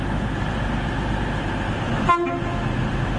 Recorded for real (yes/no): yes